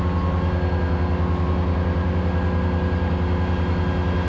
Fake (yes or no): no